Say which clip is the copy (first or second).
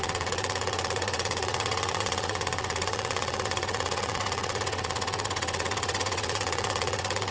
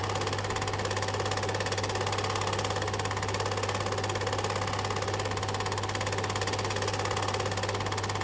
first